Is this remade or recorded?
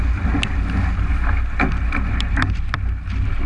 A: recorded